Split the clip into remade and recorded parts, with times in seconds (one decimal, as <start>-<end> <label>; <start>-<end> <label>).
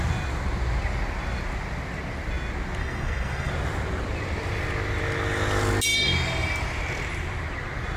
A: 0.0-2.8 recorded; 2.8-3.5 remade; 3.5-8.0 recorded